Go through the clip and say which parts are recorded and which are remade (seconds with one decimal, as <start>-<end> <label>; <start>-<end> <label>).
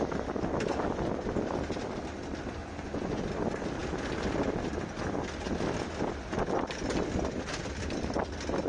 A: 0.0-2.6 recorded; 2.6-3.2 remade; 3.2-8.7 recorded